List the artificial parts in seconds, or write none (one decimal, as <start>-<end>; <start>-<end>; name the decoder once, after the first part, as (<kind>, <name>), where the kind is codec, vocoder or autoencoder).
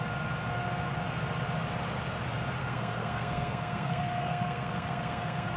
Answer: 2.6-5.6 (codec, SNAC)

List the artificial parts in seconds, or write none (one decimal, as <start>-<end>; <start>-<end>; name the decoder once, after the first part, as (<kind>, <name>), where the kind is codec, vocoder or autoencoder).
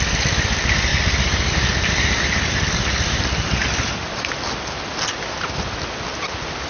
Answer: 0.0-0.9 (vocoder, BigVGAN v2); 1.9-5.1; 6.2-6.7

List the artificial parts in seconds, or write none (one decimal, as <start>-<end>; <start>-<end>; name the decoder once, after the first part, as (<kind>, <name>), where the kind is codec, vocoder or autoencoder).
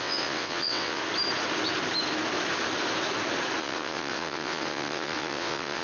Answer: 0.0-1.0 (vocoder, WaveNeXt); 3.6-5.8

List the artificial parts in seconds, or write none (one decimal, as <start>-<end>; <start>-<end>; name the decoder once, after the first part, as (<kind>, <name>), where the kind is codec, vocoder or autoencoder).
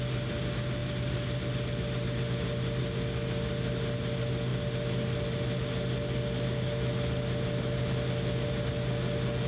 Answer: none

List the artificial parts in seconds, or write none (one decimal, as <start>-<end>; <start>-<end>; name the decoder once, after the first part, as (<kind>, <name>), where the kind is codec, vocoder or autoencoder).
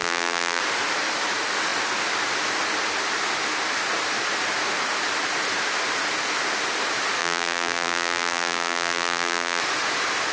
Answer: 0.0-0.6 (vocoder, BigVGAN v2); 7.2-9.6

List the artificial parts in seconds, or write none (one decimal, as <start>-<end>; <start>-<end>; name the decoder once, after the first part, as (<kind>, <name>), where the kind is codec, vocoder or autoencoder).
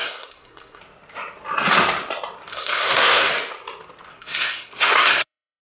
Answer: 0.0-0.8 (codec, SNAC); 2.5-3.3; 4.1-5.6